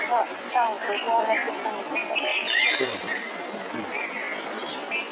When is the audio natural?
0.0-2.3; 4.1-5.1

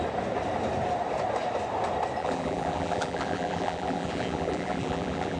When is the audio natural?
0.0-2.2

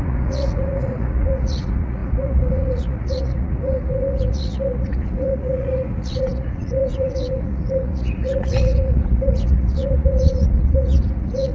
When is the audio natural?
none

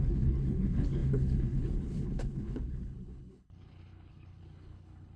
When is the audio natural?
none

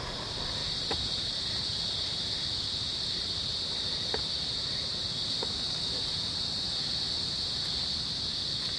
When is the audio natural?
0.0-0.6; 1.3-3.5; 7.4-8.8

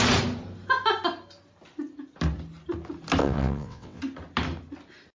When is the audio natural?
0.0-3.2; 4.0-5.2